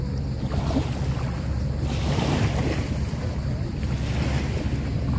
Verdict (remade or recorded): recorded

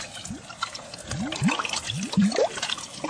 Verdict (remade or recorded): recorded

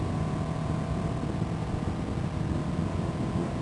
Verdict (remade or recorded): recorded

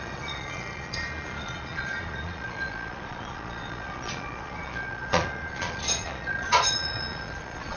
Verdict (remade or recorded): remade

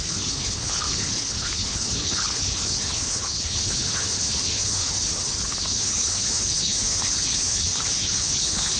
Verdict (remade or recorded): remade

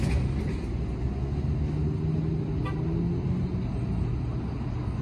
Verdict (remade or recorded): recorded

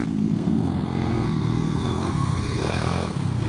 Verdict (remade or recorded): remade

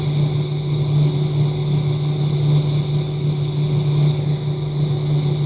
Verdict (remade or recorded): recorded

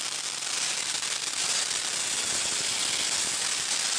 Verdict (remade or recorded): recorded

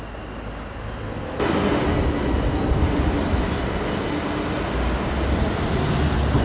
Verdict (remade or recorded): recorded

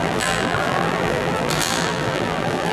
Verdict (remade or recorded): remade